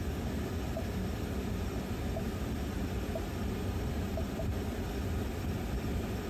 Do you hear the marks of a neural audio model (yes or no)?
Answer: no